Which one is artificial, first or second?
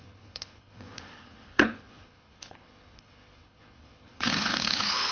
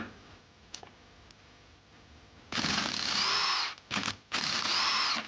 first